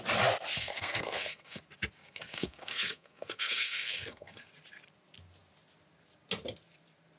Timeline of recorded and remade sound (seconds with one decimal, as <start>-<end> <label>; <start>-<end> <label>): 0.0-0.6 recorded; 0.6-1.6 remade; 1.6-2.0 recorded; 2.0-4.5 remade; 4.5-7.2 recorded